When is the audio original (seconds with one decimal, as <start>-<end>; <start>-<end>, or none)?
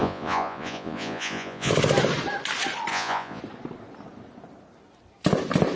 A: 1.7-2.9; 3.4-5.8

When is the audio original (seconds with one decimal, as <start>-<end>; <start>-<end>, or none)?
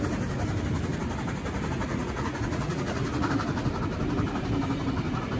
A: 0.0-1.9; 3.3-5.4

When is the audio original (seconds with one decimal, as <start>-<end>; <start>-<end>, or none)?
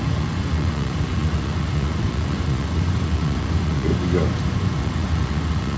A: 3.9-4.5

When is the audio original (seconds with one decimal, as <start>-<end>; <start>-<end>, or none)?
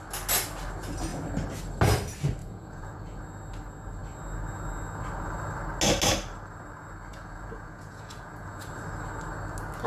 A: 0.0-2.4; 3.2-7.1; 8.6-9.9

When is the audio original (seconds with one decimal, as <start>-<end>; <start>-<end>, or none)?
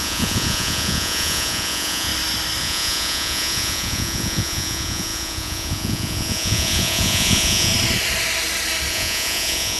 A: 2.1-2.6; 7.7-8.9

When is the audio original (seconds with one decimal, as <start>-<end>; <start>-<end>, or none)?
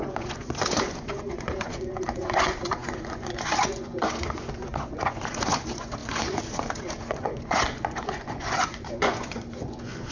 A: none